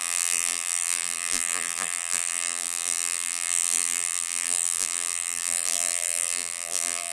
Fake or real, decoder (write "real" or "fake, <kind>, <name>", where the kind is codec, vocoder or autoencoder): fake, vocoder, BigVGAN v2